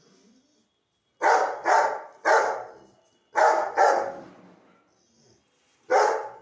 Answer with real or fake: real